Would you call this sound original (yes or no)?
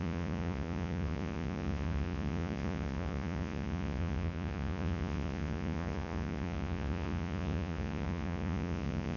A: no